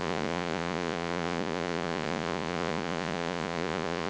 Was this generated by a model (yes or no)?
yes